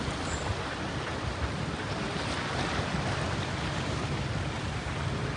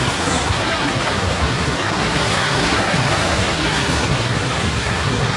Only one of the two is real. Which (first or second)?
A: first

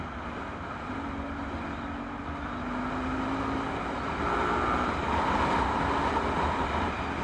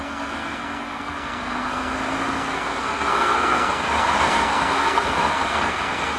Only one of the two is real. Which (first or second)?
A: first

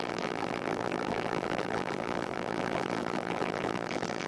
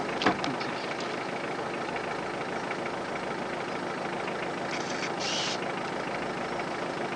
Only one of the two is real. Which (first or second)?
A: second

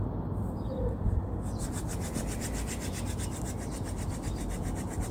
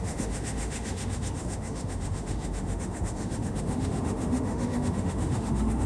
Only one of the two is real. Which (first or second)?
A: first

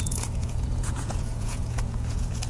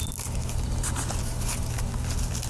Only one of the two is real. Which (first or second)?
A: second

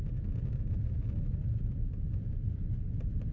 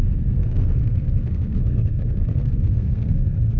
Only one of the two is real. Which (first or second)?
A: first